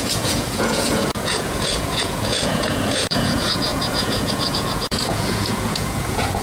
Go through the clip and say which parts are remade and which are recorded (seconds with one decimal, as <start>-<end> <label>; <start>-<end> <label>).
0.0-6.4 remade